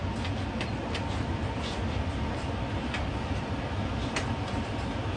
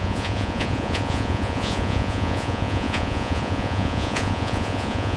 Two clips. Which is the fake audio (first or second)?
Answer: second